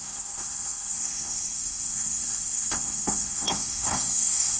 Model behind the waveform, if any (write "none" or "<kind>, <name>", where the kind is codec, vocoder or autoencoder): codec, SNAC